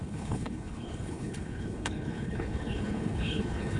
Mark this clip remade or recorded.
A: remade